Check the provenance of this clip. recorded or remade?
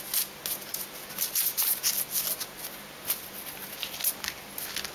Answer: recorded